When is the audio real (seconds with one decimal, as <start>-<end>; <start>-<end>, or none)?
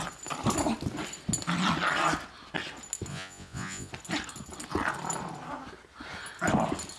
0.0-3.1; 3.9-7.0